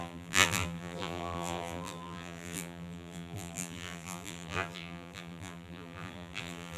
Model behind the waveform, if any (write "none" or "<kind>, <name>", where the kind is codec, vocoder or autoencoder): vocoder, BigVGAN v2